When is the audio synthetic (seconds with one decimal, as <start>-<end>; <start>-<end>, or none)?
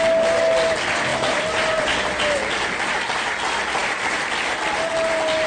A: none